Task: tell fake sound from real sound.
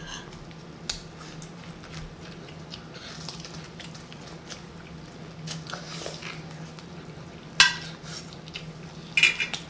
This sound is real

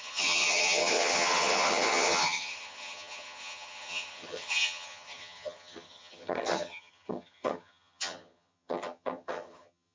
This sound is fake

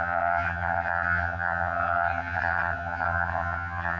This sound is fake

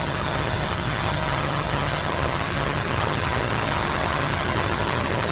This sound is fake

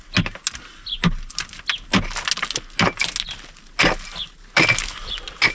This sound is real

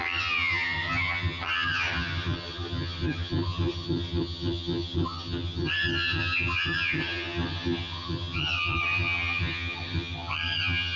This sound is fake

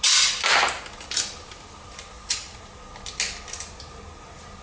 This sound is real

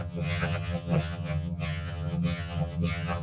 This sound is fake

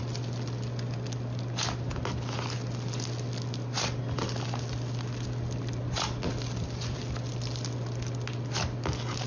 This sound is real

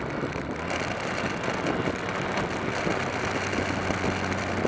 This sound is real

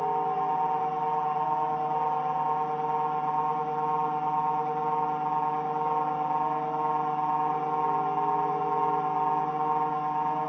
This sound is real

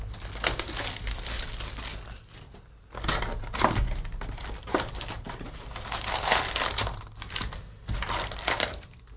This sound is real